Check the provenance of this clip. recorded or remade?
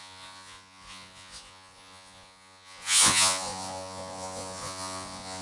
remade